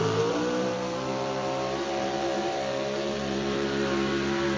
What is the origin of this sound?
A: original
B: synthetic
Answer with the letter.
B